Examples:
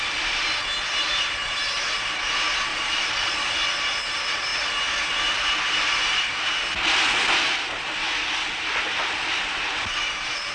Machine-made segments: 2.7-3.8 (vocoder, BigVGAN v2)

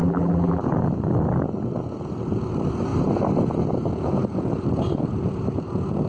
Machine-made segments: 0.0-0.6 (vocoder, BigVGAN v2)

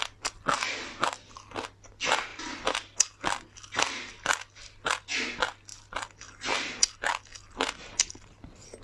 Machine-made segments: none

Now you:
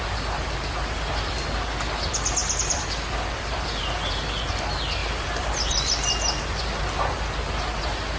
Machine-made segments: 2.4-3.8 (vocoder, BigVGAN v2); 5.0-5.9

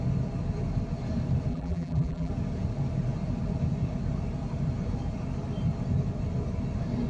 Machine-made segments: 1.5-2.3 (vocoder, BigVGAN v2)

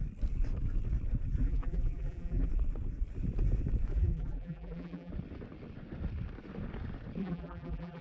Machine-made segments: 1.4-2.5 (vocoder, BigVGAN v2); 3.9-5.1; 7.2-8.0

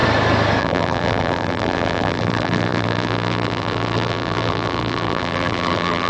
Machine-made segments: 0.6-6.1 (vocoder, BigVGAN v2)